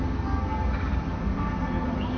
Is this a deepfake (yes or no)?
no